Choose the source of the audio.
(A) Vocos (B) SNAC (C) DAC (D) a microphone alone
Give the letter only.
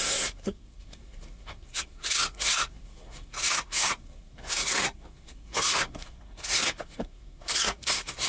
B